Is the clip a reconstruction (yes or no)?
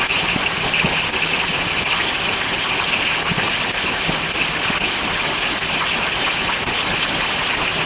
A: no